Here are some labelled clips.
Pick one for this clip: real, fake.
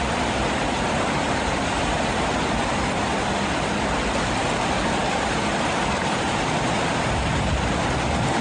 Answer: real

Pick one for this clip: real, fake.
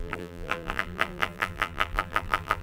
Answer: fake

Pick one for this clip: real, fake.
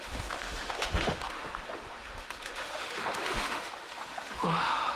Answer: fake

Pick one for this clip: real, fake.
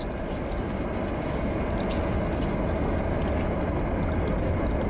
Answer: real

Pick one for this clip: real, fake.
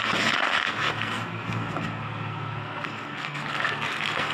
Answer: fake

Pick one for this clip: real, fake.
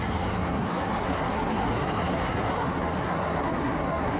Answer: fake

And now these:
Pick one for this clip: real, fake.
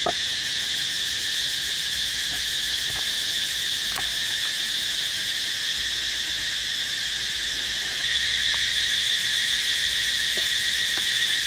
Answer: fake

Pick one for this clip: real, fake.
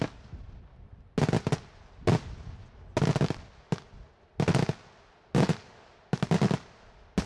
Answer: real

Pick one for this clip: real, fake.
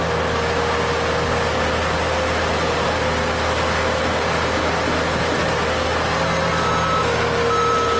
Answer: real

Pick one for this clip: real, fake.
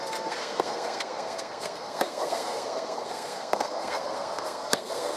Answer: fake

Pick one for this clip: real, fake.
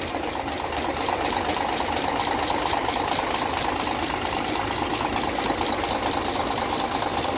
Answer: fake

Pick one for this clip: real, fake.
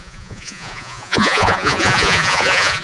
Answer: fake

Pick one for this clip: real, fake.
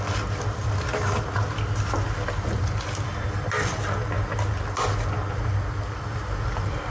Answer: real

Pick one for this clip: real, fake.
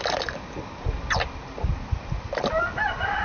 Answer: real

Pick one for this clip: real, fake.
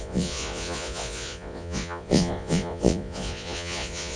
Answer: fake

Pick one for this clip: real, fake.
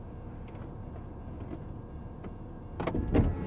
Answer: real